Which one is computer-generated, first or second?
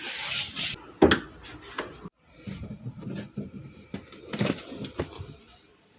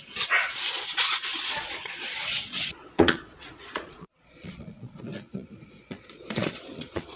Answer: second